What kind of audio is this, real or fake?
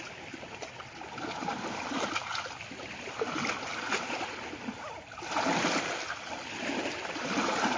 real